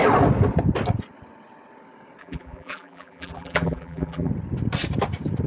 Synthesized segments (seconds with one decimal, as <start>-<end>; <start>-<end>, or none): 2.2-4.3